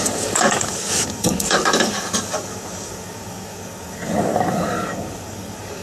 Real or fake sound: fake